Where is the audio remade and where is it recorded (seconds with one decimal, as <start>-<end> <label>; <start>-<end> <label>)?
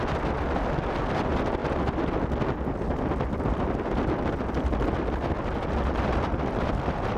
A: 0.0-1.6 remade; 1.6-5.9 recorded; 5.9-7.2 remade